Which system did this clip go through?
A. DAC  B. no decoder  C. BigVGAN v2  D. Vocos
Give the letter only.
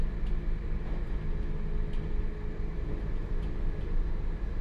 B